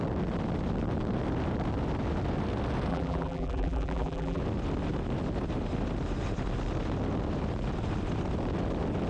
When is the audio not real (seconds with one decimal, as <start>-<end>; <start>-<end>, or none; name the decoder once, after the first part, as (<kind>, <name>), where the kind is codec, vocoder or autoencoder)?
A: 2.9-4.4 (vocoder, BigVGAN v2)